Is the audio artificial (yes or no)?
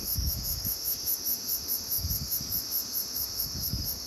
yes